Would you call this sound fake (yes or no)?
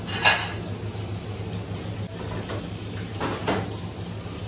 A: no